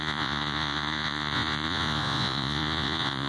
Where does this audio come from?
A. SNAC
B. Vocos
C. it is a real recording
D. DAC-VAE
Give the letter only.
B